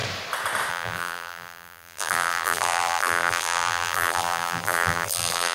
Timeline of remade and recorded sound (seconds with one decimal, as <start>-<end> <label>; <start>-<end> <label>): 0.0-0.7 recorded; 0.7-5.5 remade